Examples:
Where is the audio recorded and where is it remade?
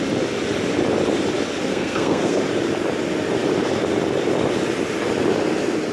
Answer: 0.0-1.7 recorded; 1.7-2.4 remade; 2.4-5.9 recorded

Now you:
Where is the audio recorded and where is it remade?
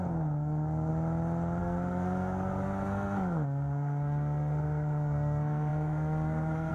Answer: 0.0-0.9 remade; 0.9-1.6 recorded; 1.6-6.7 remade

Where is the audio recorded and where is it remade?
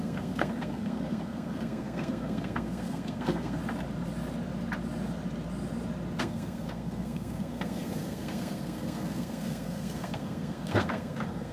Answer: 0.0-3.6 remade; 3.6-6.2 recorded; 6.2-11.5 remade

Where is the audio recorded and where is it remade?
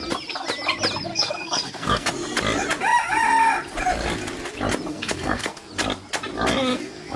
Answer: 0.0-1.1 recorded; 1.1-2.1 remade; 2.1-4.9 recorded; 4.9-5.7 remade; 5.7-6.7 recorded; 6.7-7.2 remade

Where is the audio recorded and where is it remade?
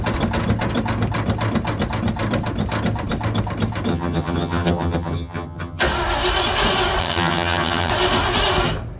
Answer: 0.0-3.9 recorded; 3.9-5.8 remade; 5.8-7.0 recorded; 7.0-7.9 remade; 7.9-9.0 recorded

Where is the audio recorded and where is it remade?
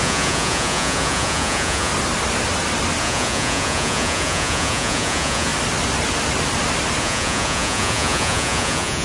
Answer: 0.0-1.9 remade; 1.9-3.0 recorded; 3.0-5.5 remade; 5.5-7.0 recorded; 7.0-9.0 remade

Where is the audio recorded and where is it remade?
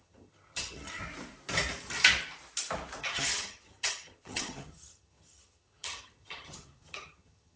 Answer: 0.0-1.0 remade; 1.0-3.0 recorded; 3.0-7.6 remade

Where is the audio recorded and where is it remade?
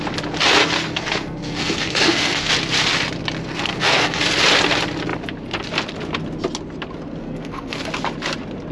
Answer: 0.0-0.6 recorded; 0.6-2.5 remade; 2.5-3.4 recorded; 3.4-4.2 remade; 4.2-7.2 recorded; 7.2-7.8 remade; 7.8-8.7 recorded